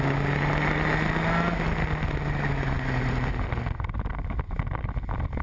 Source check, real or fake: real